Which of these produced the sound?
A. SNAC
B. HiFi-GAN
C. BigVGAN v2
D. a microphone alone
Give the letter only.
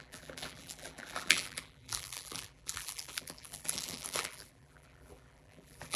C